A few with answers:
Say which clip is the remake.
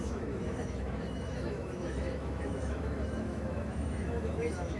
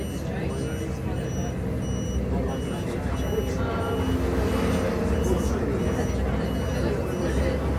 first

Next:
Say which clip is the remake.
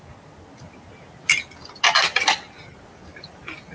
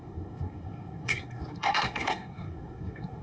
second